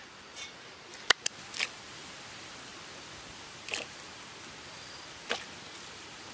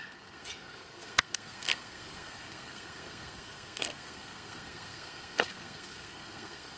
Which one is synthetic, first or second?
second